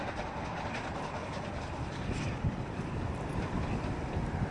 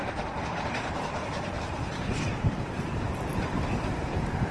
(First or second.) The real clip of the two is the first